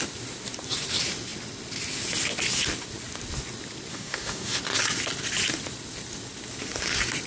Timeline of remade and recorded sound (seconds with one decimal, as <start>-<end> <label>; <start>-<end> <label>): 0.0-3.9 recorded; 3.9-4.6 remade; 4.6-7.3 recorded